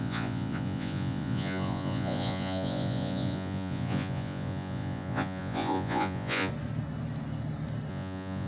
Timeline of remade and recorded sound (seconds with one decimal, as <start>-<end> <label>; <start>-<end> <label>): 0.0-6.5 remade; 6.5-7.9 recorded; 7.9-8.5 remade